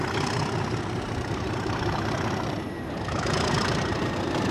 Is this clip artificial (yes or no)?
yes